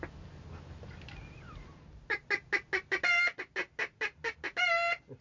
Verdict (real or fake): real